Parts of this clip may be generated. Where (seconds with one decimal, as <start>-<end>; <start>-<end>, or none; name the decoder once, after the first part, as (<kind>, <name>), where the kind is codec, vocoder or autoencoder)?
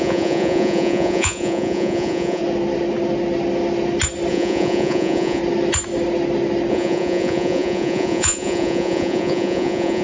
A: 0.0-2.4 (vocoder, Vocos); 4.3-5.4; 6.7-10.0